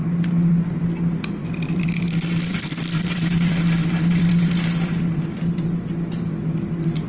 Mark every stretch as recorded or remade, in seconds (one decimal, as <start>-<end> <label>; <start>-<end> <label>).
0.0-1.4 recorded; 1.4-5.7 remade; 5.7-7.1 recorded